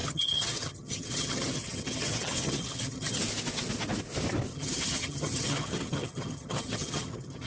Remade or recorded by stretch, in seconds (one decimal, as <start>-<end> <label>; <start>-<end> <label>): 0.0-3.2 remade; 3.2-4.5 recorded; 4.5-7.5 remade